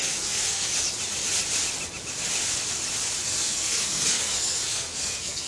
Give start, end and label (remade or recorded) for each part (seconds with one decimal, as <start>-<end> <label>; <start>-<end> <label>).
0.0-0.7 remade; 0.7-3.2 recorded; 3.2-5.5 remade